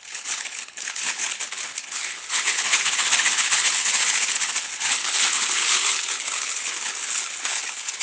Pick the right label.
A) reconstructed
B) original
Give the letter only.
A